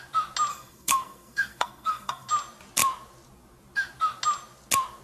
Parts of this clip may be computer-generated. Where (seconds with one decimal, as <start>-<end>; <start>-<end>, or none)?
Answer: 0.5-2.3